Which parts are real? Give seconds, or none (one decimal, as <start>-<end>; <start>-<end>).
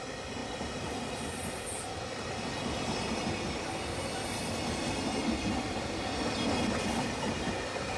0.0-8.0